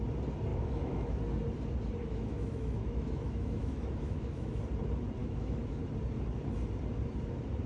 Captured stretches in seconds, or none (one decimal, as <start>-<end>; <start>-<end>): 0.0-0.5; 1.2-2.0; 4.6-5.2; 5.8-7.7